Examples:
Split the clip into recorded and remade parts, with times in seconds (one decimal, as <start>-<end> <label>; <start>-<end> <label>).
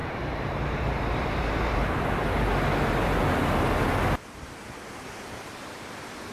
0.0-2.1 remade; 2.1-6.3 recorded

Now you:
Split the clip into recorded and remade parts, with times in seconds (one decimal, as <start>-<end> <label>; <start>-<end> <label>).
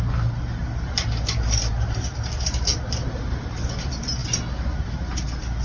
0.0-5.6 recorded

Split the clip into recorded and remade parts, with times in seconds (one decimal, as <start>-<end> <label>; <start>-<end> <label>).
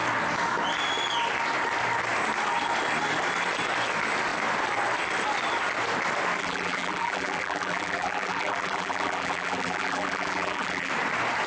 0.0-6.4 recorded; 6.4-10.9 remade; 10.9-11.5 recorded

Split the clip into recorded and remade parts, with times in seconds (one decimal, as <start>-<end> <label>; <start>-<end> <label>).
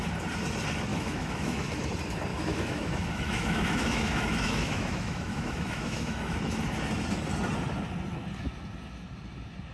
0.0-0.9 recorded; 0.9-1.9 remade; 1.9-2.3 recorded; 2.3-6.4 remade; 6.4-9.7 recorded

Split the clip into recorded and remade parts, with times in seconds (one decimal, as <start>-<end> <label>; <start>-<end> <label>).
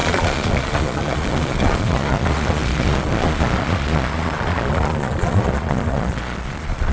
0.0-6.9 remade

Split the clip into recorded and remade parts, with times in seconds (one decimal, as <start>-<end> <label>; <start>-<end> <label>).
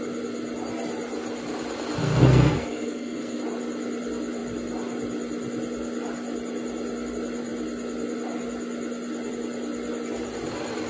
0.0-2.0 recorded; 2.0-3.4 remade; 3.4-10.9 recorded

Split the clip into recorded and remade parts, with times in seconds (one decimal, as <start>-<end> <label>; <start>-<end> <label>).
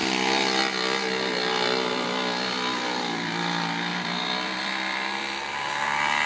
0.0-1.9 recorded; 1.9-6.3 remade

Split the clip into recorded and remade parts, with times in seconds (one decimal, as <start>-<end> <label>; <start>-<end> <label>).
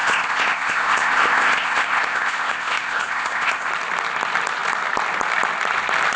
0.0-3.7 remade; 3.7-6.2 recorded